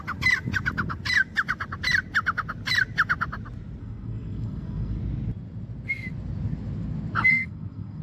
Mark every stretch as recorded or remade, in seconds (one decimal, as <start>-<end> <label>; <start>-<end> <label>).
0.0-3.8 recorded; 3.8-5.0 remade; 5.0-7.3 recorded; 7.3-8.0 remade